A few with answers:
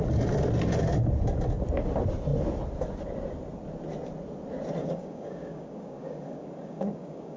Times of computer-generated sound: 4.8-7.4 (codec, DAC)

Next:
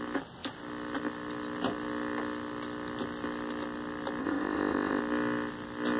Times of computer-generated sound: 4.2-5.0 (codec, ZipCodec)

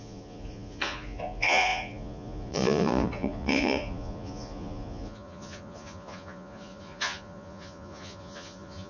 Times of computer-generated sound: 0.0-8.9 (vocoder, Vocos)

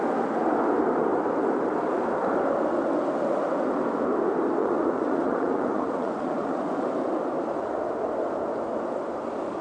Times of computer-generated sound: 4.6-6.8 (vocoder, Vocos)

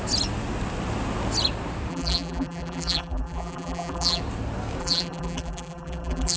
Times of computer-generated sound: 1.9-4.2 (vocoder, BigVGAN v2); 4.8-6.4